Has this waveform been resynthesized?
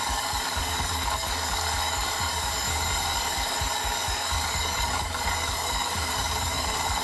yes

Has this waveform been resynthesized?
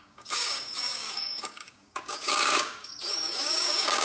yes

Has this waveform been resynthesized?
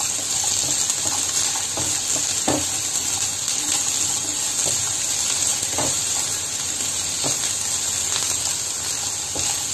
no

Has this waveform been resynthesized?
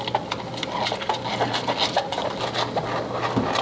no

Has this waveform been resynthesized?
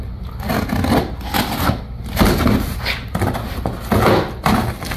no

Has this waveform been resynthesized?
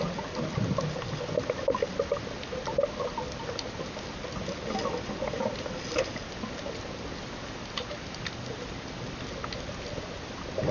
no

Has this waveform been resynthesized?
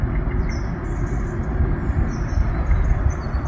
no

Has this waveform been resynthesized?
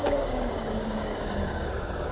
yes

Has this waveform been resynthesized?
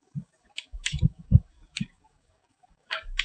yes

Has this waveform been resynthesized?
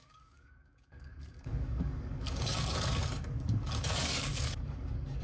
yes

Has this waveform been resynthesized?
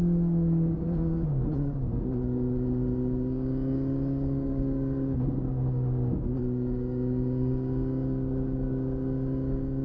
yes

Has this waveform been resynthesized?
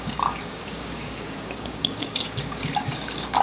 yes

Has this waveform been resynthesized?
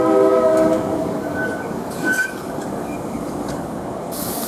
yes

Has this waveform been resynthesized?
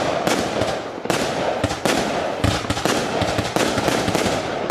no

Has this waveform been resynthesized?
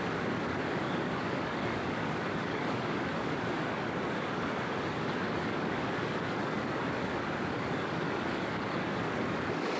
yes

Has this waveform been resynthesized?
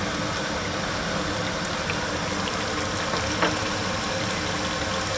no